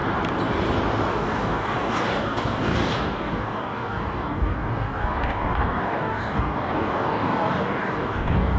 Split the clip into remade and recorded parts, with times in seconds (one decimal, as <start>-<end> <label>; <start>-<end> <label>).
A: 0.0-1.1 recorded; 1.1-8.6 remade